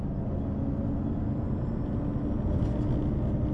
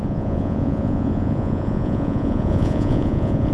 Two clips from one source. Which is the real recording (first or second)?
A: first